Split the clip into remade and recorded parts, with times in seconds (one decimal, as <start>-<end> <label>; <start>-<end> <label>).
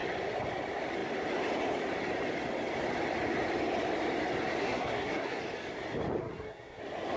0.0-4.6 recorded; 4.6-5.4 remade; 5.4-6.2 recorded; 6.2-6.8 remade; 6.8-7.2 recorded